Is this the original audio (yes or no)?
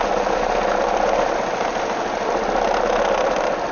yes